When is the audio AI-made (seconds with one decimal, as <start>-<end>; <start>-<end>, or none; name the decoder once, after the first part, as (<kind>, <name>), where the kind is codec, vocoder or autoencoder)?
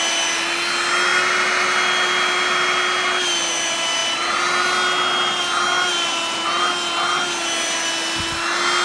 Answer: none